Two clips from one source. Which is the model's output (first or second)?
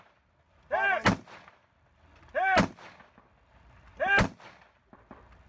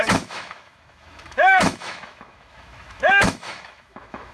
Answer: second